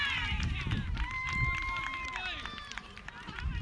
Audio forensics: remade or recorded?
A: remade